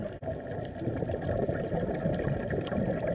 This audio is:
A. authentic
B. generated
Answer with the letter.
A